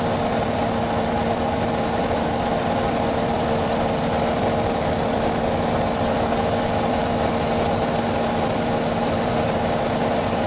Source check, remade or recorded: remade